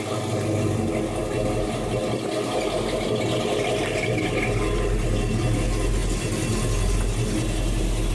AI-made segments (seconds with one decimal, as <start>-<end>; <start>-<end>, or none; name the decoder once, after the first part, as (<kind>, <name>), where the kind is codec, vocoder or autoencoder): none